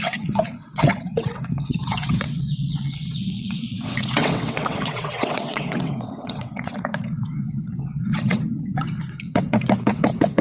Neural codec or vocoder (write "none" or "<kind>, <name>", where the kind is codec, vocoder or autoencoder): vocoder, WaveNeXt